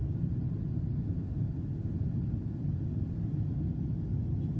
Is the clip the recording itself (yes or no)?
yes